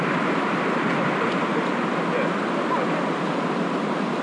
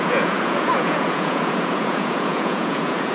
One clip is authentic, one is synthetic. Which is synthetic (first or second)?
second